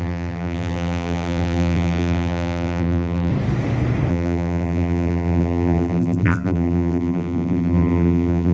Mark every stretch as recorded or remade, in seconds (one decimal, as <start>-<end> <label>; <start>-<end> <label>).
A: 0.0-3.3 remade; 3.3-4.1 recorded; 4.1-8.5 remade